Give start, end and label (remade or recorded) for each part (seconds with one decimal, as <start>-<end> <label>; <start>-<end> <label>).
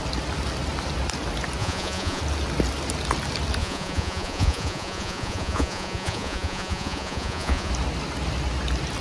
0.0-1.6 recorded; 1.6-2.2 remade; 2.2-3.6 recorded; 3.6-7.7 remade; 7.7-9.0 recorded